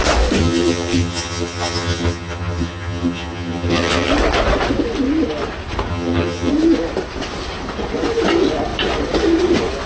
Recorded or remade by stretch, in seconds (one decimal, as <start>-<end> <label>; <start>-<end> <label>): 0.0-0.4 recorded; 0.4-4.1 remade; 4.1-5.9 recorded; 5.9-6.5 remade; 6.5-9.9 recorded